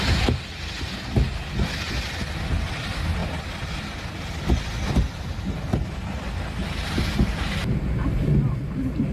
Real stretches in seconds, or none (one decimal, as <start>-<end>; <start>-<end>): 0.0-9.1